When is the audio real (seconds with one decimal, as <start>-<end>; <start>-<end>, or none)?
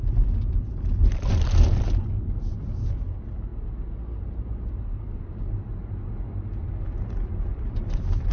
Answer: 1.6-7.5